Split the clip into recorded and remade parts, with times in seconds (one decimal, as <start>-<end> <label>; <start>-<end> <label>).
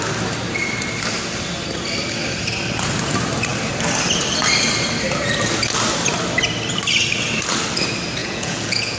0.0-8.2 recorded; 8.2-9.0 remade